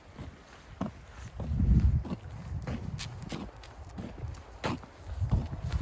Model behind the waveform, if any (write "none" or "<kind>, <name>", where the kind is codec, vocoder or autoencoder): none